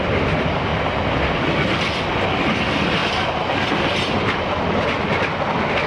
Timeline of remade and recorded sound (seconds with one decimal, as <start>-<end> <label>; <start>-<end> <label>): 0.0-5.9 recorded